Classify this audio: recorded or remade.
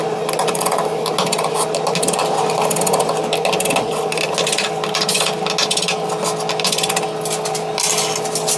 recorded